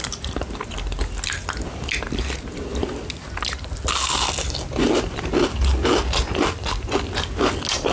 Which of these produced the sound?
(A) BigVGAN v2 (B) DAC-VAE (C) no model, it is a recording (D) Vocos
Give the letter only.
C